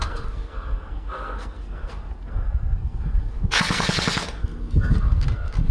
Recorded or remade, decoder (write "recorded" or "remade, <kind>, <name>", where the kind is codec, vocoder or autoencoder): remade, codec, SNAC